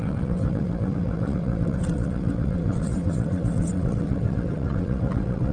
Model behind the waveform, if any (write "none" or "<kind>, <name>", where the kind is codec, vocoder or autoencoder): vocoder, WaveNeXt